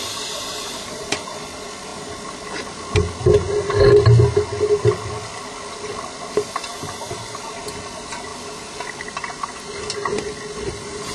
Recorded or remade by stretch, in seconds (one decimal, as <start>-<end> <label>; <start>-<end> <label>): 0.0-11.1 recorded